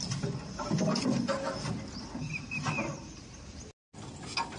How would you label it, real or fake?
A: real